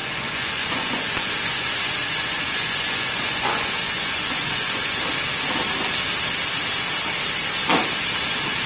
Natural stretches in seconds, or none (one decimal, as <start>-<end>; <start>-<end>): 4.9-8.7